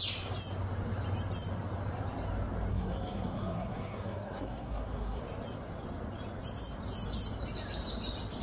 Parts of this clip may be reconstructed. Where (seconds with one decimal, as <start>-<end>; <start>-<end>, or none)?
2.7-5.2